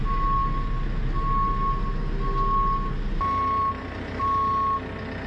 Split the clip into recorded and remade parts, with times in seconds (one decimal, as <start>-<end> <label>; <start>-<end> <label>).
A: 0.0-5.3 recorded